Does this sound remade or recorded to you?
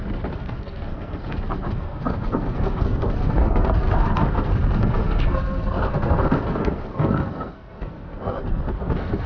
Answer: remade